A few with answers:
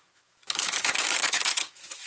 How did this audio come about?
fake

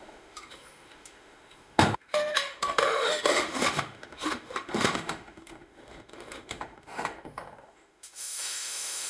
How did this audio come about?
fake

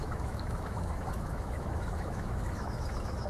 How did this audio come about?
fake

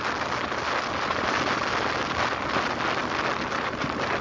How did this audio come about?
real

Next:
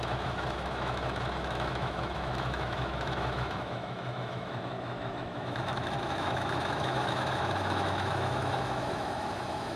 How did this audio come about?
fake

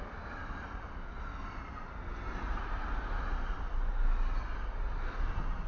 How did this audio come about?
real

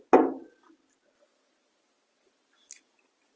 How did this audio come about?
real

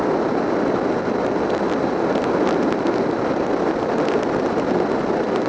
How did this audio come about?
real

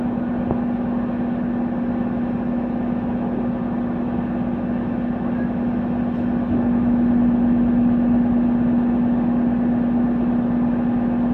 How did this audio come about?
real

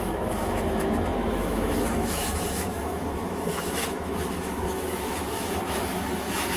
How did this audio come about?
fake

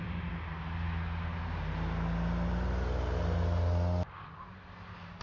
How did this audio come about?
real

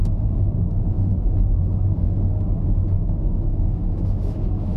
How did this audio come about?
fake